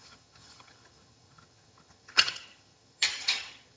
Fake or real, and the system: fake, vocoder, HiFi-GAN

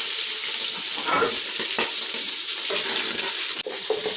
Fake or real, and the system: real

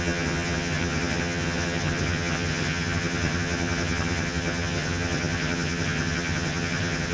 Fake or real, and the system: fake, vocoder, HiFi-GAN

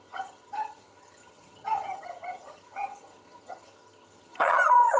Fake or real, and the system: fake, vocoder, HiFi-GAN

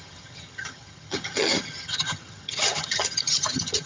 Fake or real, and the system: fake, vocoder, HiFi-GAN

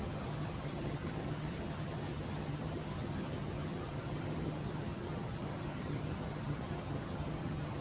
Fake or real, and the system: fake, vocoder, HiFi-GAN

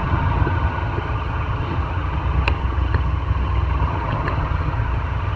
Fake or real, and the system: fake, vocoder, HiFi-GAN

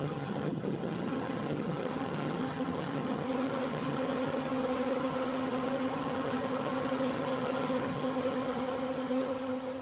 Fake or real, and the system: fake, vocoder, HiFi-GAN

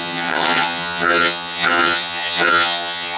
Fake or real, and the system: fake, vocoder, HiFi-GAN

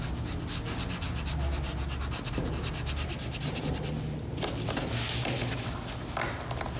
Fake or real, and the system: real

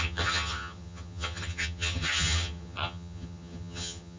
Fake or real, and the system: fake, vocoder, HiFi-GAN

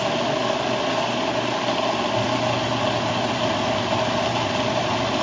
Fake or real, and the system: real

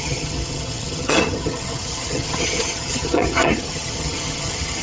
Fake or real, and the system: fake, vocoder, HiFi-GAN